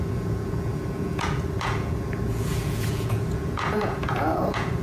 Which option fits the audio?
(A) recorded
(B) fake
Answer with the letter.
B